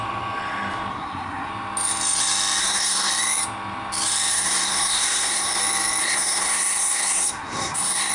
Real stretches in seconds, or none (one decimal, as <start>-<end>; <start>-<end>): 0.0-0.9; 1.5-2.6; 3.1-4.3; 5.6-6.0